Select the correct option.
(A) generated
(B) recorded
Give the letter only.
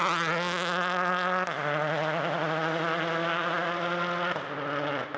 B